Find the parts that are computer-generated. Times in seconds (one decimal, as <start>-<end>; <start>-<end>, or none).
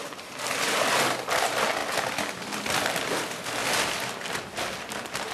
none